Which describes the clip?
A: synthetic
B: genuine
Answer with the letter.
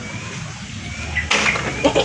B